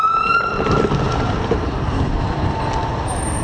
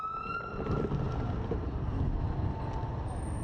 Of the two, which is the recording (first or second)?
second